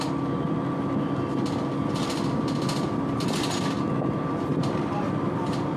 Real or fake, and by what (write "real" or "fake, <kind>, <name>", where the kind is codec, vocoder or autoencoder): real